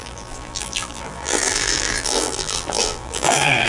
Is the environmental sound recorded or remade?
remade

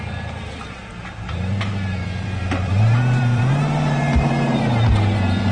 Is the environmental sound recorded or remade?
remade